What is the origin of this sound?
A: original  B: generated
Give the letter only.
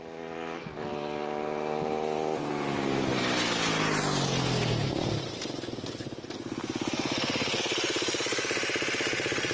A